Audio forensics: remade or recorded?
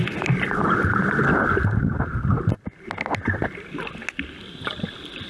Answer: recorded